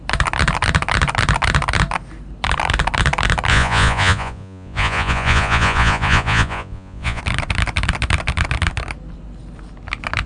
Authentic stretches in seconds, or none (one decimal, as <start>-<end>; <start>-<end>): 0.0-3.5; 7.2-10.3